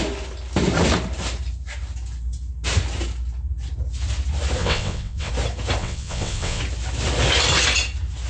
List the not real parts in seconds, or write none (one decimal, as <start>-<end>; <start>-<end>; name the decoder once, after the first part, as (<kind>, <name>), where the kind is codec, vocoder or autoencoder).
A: 4.6-5.3 (vocoder, WaveNeXt); 5.8-6.6